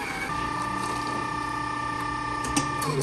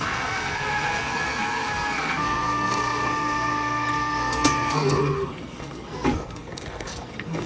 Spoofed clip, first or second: second